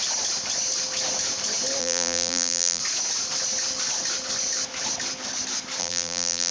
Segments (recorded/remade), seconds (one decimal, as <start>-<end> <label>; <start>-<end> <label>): 0.0-1.8 recorded; 1.8-2.8 remade; 2.8-5.8 recorded; 5.8-6.5 remade